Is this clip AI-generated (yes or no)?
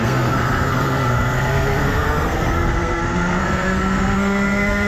yes